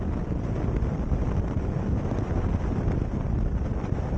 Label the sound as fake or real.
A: real